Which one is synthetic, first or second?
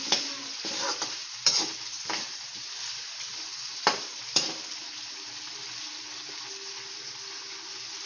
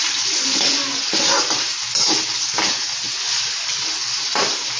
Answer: first